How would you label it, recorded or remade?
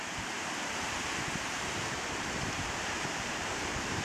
remade